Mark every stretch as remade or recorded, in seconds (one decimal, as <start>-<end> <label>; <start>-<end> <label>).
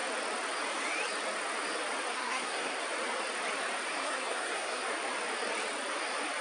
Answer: 0.0-2.1 recorded; 2.1-2.8 remade; 2.8-4.0 recorded; 4.0-4.8 remade; 4.8-6.4 recorded